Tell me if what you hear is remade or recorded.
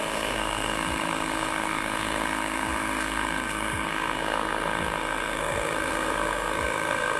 remade